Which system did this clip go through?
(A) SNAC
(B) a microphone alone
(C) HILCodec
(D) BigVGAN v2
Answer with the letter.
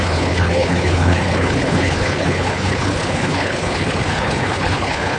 C